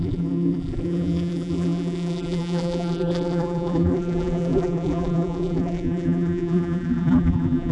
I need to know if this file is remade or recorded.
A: remade